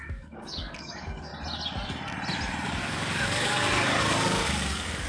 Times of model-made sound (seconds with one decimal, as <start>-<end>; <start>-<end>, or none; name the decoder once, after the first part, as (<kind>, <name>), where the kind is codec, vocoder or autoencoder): 0.0-1.3 (codec, DAC); 2.8-5.1